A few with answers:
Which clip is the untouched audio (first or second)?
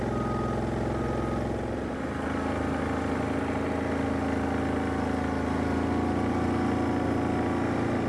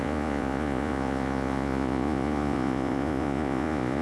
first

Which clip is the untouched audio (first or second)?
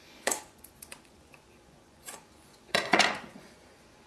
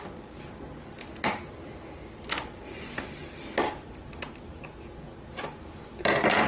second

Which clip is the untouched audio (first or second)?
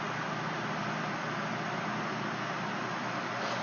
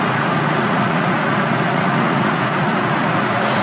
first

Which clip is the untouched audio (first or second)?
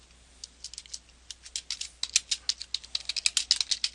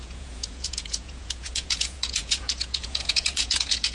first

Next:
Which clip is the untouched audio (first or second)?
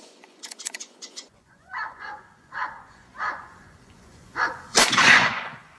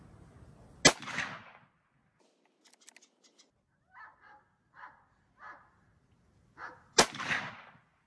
second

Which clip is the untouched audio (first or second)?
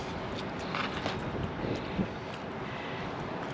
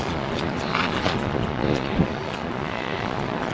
first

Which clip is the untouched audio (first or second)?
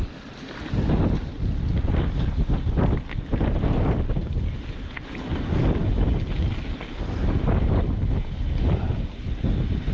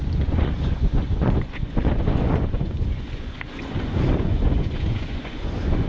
first